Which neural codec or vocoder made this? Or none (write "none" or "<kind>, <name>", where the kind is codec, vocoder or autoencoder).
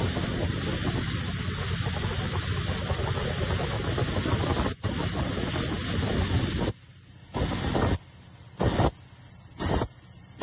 none